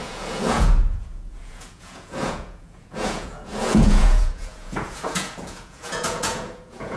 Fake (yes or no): yes